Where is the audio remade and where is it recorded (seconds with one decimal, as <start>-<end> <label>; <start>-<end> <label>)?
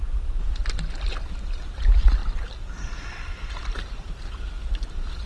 0.0-5.3 recorded